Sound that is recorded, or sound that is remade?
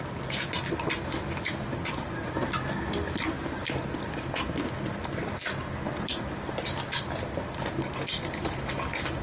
recorded